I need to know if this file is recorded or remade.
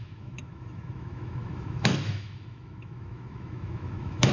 remade